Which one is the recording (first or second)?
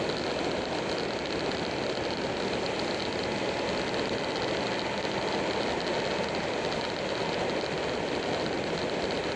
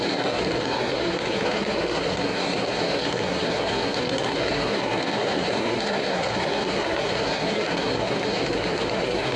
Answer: first